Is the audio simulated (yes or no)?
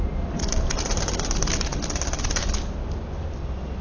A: no